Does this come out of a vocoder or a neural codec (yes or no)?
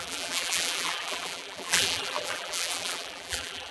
yes